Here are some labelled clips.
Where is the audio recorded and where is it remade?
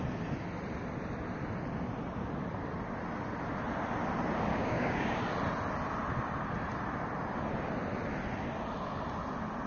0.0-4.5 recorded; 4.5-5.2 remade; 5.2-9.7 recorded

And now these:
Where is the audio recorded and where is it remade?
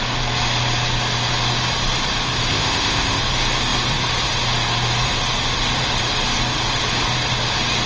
0.0-2.5 recorded; 2.5-3.2 remade; 3.2-7.9 recorded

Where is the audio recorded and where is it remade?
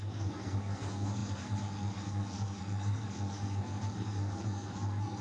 0.0-5.2 remade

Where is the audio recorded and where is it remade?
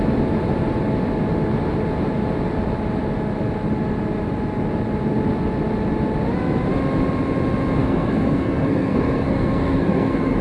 0.0-7.8 recorded; 7.8-10.4 remade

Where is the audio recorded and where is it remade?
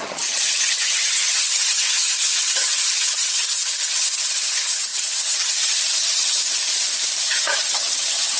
0.0-6.4 remade; 6.4-7.2 recorded; 7.2-8.4 remade